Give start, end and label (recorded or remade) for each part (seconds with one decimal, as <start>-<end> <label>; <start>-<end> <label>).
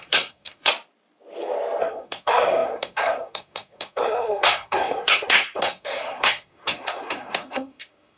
0.0-0.7 remade; 0.7-1.8 recorded; 1.8-8.2 remade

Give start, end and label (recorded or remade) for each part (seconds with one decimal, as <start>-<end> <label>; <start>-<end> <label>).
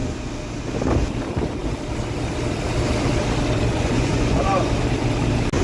0.0-3.7 recorded; 3.7-4.7 remade; 4.7-5.6 recorded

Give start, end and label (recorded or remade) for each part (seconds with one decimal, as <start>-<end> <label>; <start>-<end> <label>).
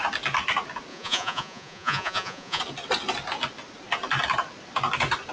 0.0-0.9 recorded; 0.9-2.6 remade; 2.6-5.3 recorded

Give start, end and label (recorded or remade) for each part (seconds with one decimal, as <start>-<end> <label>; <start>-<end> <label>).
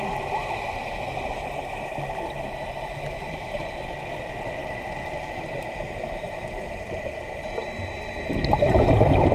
0.0-9.3 recorded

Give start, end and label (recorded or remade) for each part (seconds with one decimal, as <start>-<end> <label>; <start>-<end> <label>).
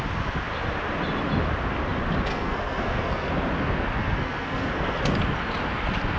0.0-2.3 recorded; 2.3-3.3 remade; 3.3-4.0 recorded; 4.0-5.0 remade; 5.0-6.2 recorded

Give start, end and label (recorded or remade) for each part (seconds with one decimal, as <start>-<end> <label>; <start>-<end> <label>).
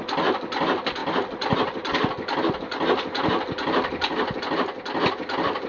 0.0-5.7 recorded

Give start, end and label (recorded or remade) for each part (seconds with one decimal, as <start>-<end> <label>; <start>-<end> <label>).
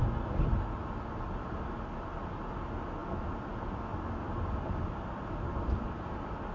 0.0-6.5 recorded